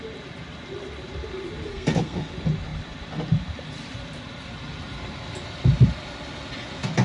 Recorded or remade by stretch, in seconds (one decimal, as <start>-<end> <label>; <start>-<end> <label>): 0.0-1.7 recorded; 1.7-2.3 remade; 2.3-7.0 recorded